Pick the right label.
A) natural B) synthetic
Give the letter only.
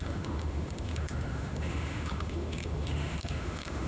B